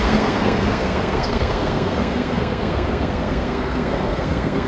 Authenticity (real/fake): fake